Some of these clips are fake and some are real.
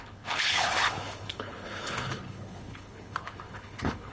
fake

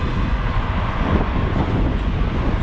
fake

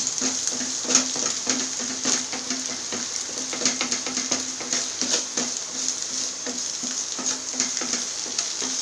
real